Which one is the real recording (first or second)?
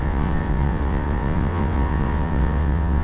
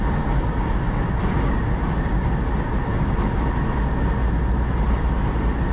second